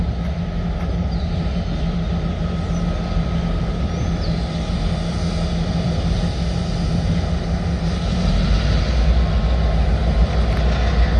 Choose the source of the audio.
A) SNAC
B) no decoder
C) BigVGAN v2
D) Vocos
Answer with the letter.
B